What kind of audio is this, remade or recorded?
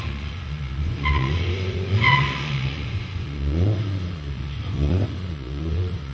remade